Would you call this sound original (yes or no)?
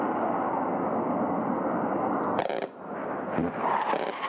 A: yes